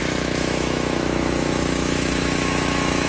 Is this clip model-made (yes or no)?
yes